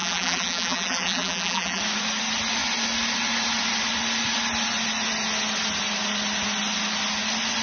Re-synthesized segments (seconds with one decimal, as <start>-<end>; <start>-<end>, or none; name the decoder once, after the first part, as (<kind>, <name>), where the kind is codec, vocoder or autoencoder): 0.0-1.8 (vocoder, BigVGAN v2)